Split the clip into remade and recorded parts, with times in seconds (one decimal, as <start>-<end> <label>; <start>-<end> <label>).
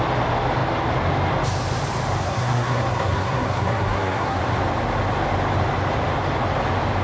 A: 0.0-2.2 recorded; 2.2-4.4 remade; 4.4-7.0 recorded